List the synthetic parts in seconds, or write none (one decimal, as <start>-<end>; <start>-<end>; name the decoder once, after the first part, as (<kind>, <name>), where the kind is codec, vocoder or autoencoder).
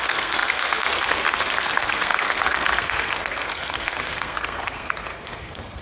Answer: 0.0-5.8 (codec, SNAC)